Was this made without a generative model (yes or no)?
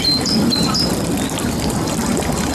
no